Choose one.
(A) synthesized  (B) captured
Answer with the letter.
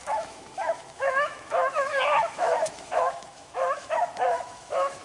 A